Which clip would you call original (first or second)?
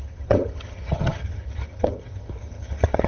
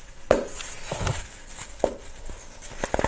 second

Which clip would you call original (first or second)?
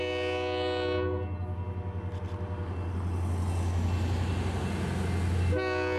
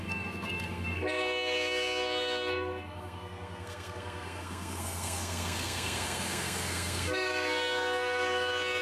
first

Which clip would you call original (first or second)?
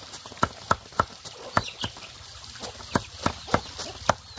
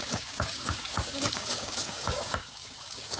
first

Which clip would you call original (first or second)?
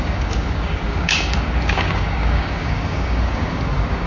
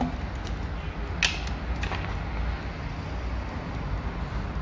second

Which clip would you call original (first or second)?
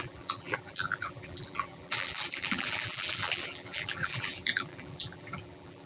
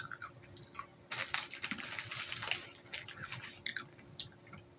second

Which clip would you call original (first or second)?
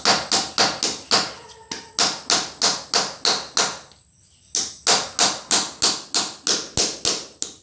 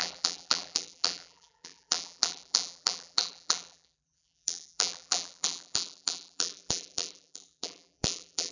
first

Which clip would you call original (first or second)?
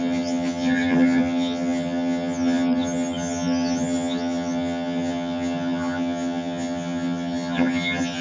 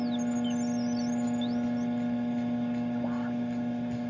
second